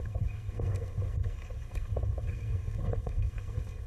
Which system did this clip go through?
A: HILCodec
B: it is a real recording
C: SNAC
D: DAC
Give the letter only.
C